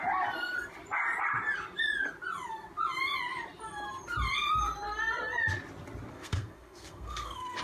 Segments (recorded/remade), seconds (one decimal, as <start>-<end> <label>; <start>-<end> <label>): 0.0-6.1 recorded; 6.1-7.6 remade